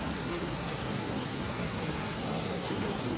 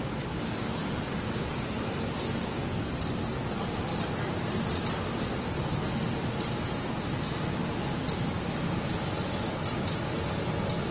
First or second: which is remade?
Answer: first